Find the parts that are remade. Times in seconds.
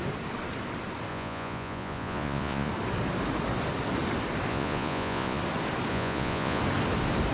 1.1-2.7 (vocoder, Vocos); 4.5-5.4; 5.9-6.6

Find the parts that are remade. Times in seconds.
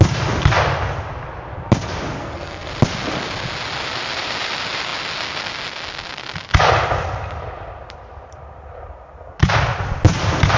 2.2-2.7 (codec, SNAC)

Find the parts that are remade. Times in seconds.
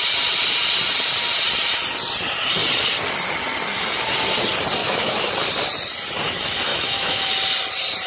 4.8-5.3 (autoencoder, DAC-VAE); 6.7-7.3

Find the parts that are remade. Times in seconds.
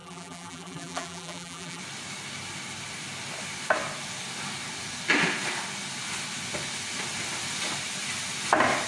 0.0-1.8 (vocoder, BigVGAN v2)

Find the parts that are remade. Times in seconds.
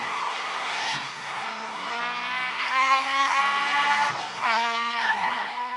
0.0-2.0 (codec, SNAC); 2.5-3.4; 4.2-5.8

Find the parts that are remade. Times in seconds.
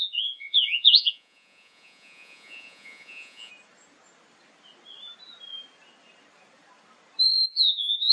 0.0-3.5 (vocoder, Vocos); 7.5-8.1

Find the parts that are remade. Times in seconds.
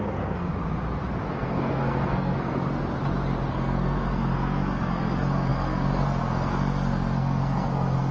0.0-0.5 (codec, SNAC); 1.2-2.8; 3.5-8.1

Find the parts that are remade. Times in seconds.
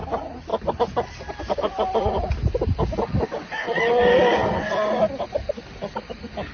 none